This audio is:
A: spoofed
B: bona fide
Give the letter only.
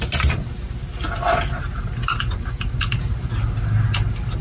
B